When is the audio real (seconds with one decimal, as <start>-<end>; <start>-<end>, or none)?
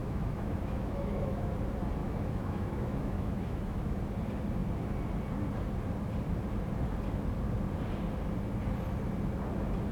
1.5-2.0; 4.0-9.9